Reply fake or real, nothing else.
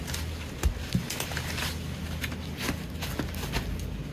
real